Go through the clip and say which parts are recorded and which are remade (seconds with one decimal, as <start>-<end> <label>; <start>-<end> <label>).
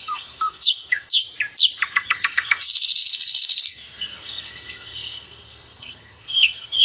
0.0-1.2 remade; 1.2-1.9 recorded; 1.9-6.8 remade